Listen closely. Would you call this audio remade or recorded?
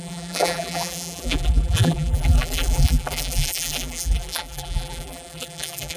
remade